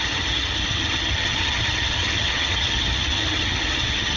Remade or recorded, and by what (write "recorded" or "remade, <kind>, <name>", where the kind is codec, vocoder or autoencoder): remade, vocoder, HiFi-GAN